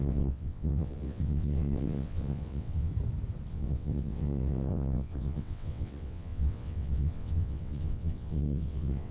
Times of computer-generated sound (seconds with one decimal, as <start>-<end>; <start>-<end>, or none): 0.0-2.9; 3.5-9.1